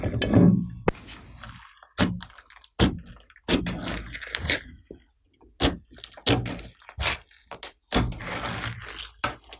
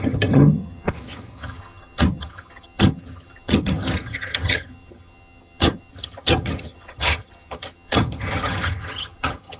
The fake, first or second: second